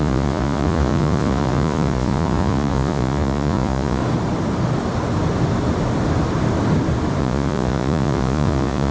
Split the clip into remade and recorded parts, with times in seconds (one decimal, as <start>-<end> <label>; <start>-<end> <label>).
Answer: 0.0-4.0 remade; 4.0-7.2 recorded; 7.2-8.9 remade